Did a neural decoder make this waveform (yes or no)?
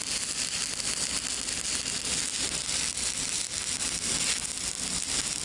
no